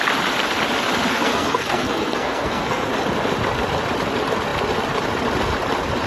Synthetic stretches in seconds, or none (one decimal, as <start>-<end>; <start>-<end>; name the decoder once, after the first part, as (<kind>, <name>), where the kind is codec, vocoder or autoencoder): 1.1-2.9 (codec, SNAC)